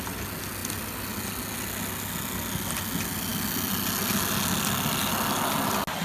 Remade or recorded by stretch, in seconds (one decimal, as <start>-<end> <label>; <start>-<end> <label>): 0.0-6.0 recorded